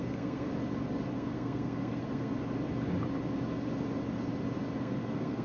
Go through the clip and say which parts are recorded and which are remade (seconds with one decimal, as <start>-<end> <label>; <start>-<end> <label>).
0.0-0.5 remade; 0.5-1.1 recorded; 1.1-2.3 remade; 2.3-4.8 recorded; 4.8-5.4 remade